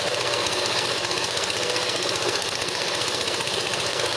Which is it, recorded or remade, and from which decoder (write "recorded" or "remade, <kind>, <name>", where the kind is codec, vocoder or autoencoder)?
remade, codec, SNAC